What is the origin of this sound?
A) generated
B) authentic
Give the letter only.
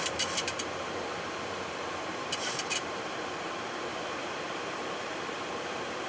A